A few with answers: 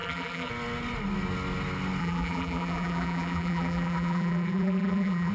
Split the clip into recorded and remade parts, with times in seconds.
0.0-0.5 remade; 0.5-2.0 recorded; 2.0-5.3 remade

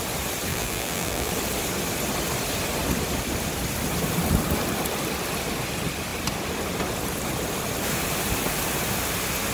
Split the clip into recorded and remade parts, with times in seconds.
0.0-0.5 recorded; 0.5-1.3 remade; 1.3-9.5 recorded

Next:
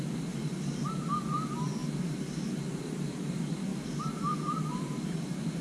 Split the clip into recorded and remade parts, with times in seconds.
0.0-1.8 recorded; 1.8-2.6 remade; 2.6-3.7 recorded; 3.7-5.6 remade

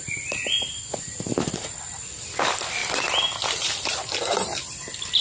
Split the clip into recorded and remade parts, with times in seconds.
0.0-0.4 remade; 0.4-1.0 recorded; 1.0-2.8 remade; 2.8-3.6 recorded; 3.6-5.2 remade

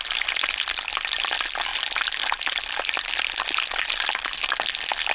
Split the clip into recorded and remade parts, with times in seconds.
0.0-5.1 recorded

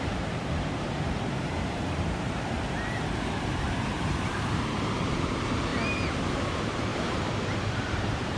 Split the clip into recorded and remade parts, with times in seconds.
0.0-5.7 remade; 5.7-6.3 recorded; 6.3-6.9 remade; 6.9-8.0 recorded; 8.0-8.4 remade

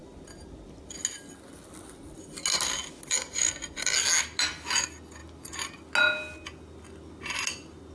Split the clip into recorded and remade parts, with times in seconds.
0.0-7.9 recorded

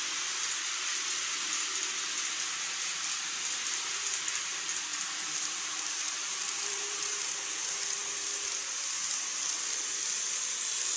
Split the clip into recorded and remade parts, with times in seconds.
0.0-4.9 recorded; 4.9-7.2 remade; 7.2-11.0 recorded